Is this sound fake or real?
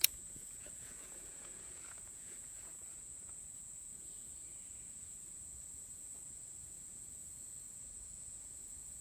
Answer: fake